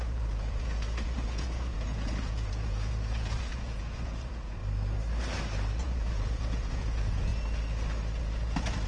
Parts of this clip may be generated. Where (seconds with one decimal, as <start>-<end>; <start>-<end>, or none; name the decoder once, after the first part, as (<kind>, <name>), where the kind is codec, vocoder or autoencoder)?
0.0-4.6 (vocoder, Vocos); 5.8-7.3; 8.2-8.9